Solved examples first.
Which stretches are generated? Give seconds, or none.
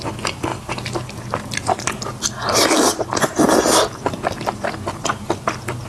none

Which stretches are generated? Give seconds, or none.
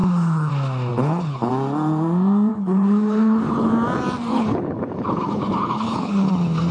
0.0-0.5; 0.9-1.5; 2.5-3.7; 4.3-6.3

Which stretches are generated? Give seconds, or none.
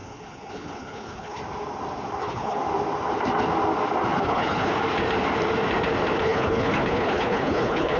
0.0-1.4; 2.2-2.6; 4.2-4.7; 6.2-8.0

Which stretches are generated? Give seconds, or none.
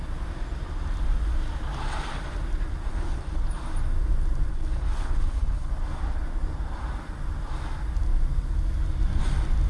2.9-3.4; 4.5-5.7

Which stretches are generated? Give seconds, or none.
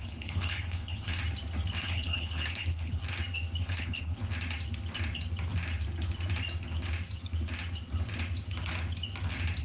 0.0-1.2; 1.8-3.0; 3.6-4.2